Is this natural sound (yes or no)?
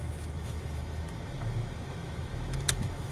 no